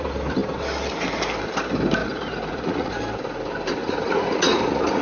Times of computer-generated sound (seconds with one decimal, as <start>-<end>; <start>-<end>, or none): 2.0-3.0; 3.8-5.0